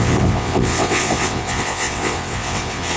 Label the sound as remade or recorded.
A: remade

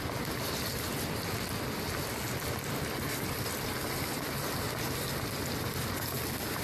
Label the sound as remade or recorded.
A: recorded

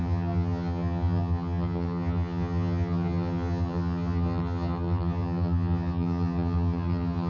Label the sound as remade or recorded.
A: remade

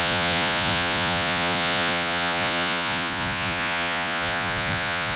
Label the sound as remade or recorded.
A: remade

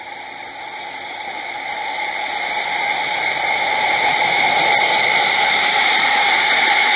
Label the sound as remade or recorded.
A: recorded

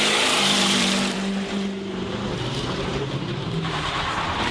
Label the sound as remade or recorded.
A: remade